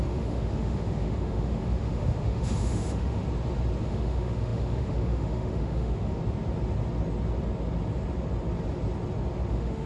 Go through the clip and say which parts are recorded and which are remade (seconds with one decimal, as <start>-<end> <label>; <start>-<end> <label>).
0.0-3.2 remade; 3.2-3.8 recorded; 3.8-6.2 remade; 6.2-9.5 recorded; 9.5-9.9 remade